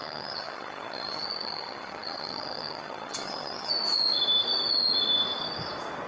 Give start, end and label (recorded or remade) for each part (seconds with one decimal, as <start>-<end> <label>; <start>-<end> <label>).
0.0-3.7 remade; 3.7-6.1 recorded